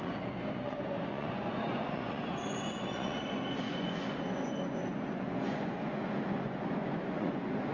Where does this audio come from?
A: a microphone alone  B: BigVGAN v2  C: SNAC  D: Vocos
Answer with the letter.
D